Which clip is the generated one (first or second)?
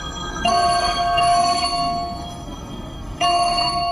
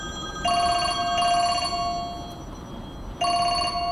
first